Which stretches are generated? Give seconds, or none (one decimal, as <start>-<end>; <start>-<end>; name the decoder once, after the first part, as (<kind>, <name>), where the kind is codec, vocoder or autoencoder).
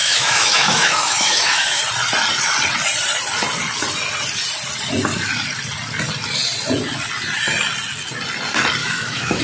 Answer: 0.0-1.8 (autoencoder, DAC-VAE); 8.8-9.4